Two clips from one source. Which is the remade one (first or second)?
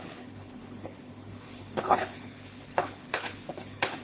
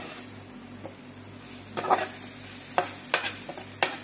first